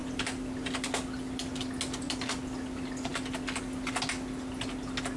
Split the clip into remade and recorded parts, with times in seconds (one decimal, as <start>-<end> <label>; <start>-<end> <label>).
0.0-5.2 recorded